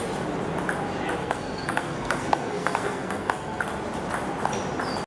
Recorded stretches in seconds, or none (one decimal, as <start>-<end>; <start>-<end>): 0.0-1.2; 3.6-5.1